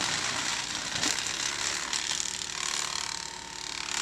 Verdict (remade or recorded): recorded